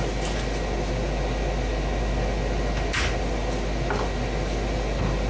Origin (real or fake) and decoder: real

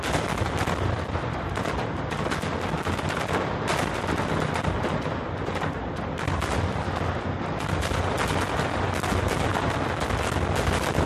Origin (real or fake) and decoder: real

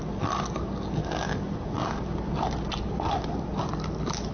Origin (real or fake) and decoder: real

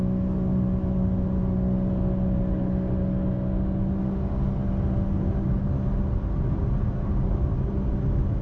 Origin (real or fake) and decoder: real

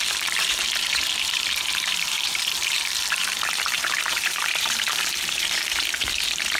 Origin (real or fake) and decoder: fake, vocoder, BigVGAN v2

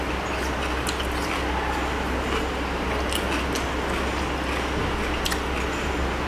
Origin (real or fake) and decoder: real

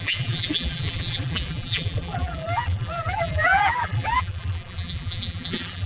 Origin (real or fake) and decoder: fake, vocoder, BigVGAN v2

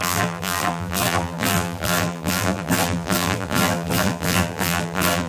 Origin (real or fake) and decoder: fake, vocoder, BigVGAN v2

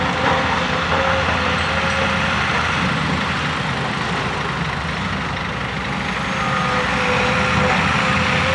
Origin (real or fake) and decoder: real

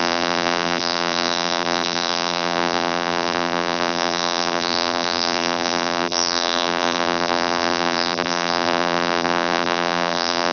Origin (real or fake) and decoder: fake, vocoder, BigVGAN v2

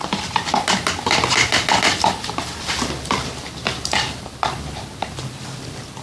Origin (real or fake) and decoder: fake, vocoder, BigVGAN v2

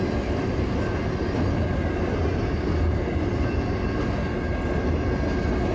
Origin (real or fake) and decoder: real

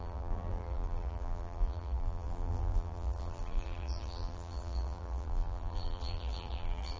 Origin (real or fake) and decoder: fake, vocoder, BigVGAN v2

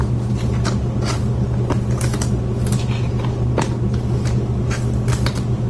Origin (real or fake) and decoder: real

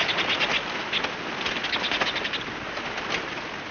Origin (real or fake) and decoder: real